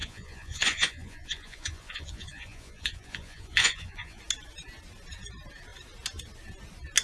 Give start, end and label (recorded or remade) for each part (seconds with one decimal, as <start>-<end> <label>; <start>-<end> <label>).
0.0-4.2 remade; 4.2-7.0 recorded